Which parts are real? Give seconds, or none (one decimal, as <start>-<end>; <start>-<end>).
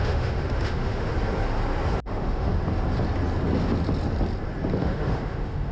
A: 1.1-2.0; 2.5-4.8